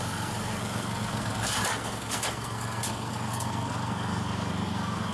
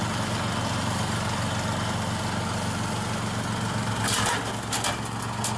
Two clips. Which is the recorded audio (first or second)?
second